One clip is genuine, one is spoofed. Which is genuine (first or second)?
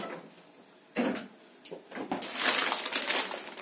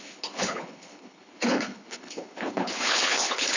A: first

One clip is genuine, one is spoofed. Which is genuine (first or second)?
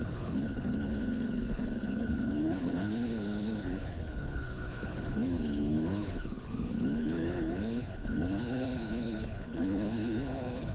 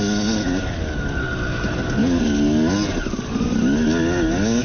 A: second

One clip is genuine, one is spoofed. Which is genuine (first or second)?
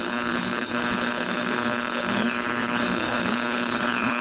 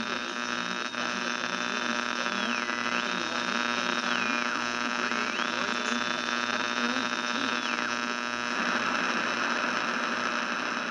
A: second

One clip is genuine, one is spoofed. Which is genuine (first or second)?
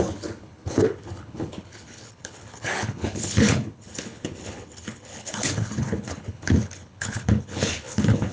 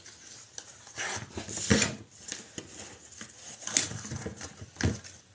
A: second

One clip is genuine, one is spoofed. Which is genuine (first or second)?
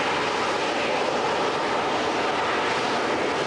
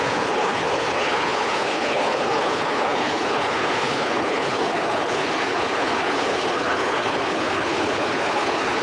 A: first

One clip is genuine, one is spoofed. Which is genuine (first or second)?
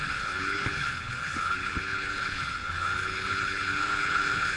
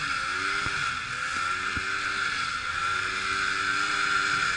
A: second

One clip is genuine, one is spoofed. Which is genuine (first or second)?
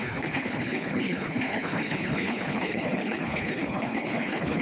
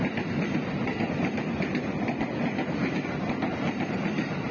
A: second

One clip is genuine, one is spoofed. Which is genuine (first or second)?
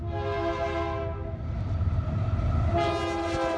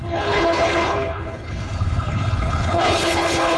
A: first